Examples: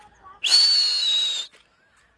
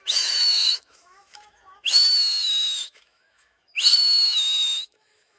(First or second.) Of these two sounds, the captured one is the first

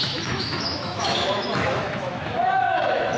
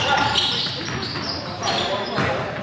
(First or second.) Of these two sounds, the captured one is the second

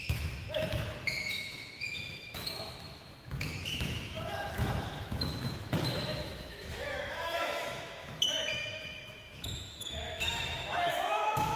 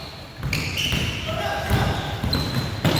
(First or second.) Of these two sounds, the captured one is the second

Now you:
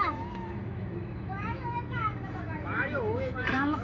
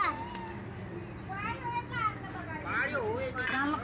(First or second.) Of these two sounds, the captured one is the second